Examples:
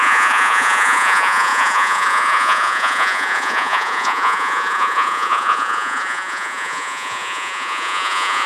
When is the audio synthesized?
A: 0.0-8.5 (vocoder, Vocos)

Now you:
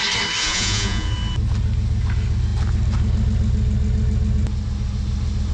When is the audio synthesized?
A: 0.4-1.1 (vocoder, Vocos)

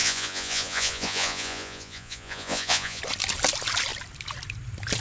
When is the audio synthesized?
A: 0.0-3.0 (vocoder, Vocos)